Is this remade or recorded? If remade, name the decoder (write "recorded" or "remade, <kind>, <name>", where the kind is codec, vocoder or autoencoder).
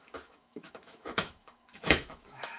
remade, autoencoder, DAC-VAE